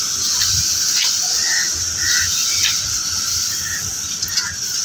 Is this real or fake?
real